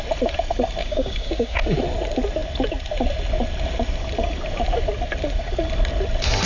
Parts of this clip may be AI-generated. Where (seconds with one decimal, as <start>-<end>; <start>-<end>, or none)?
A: 0.8-1.8